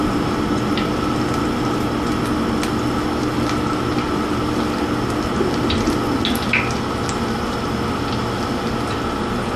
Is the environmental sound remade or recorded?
recorded